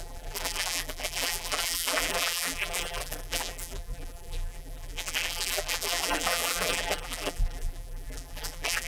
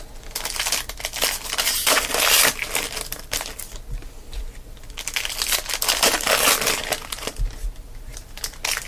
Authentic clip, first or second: second